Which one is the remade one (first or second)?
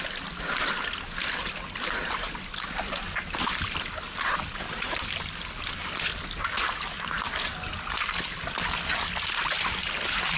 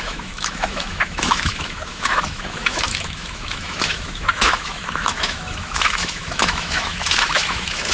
second